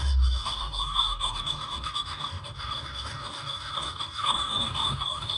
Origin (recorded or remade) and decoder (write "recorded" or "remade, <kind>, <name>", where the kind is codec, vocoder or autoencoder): remade, codec, DAC